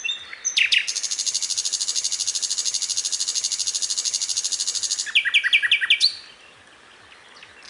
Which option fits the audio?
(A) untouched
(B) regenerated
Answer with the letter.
A